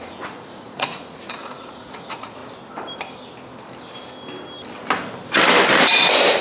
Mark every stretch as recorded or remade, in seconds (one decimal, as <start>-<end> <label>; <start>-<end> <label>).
0.0-2.4 remade; 2.4-6.4 recorded